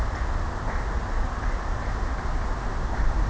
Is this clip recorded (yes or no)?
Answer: yes